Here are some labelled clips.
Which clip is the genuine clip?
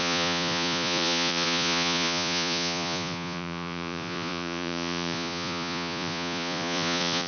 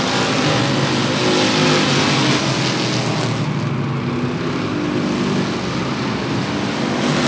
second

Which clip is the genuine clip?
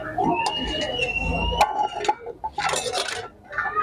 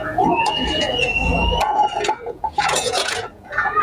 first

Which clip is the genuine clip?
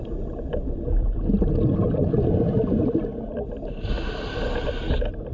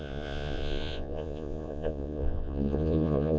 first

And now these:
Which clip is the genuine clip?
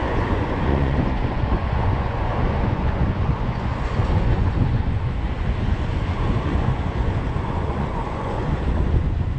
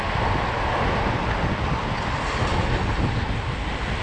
second